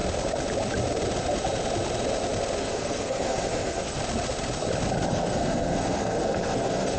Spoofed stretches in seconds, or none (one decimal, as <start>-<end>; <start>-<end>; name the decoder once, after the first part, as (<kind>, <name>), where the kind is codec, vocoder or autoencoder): 2.6-4.0 (codec, SNAC); 5.1-7.0